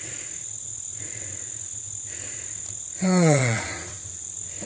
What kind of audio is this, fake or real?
fake